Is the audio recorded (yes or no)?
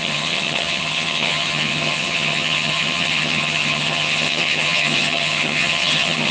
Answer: no